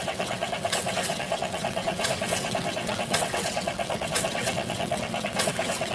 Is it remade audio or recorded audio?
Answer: remade